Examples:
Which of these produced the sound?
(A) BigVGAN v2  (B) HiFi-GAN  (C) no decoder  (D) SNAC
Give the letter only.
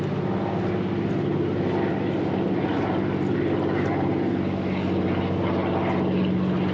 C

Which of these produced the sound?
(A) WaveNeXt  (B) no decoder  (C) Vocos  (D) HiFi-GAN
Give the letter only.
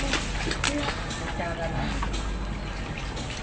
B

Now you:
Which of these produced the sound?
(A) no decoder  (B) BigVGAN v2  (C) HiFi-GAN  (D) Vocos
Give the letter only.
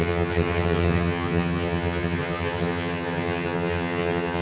C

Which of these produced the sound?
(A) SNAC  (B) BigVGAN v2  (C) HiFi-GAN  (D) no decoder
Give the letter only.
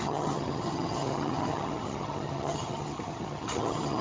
C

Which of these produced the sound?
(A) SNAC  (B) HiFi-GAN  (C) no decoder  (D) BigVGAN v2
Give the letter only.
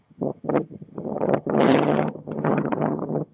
B